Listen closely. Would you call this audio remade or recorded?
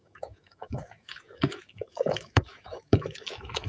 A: remade